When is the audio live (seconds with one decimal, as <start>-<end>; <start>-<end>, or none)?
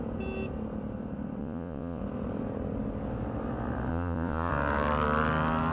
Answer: 0.0-1.4; 2.0-3.9; 4.5-5.7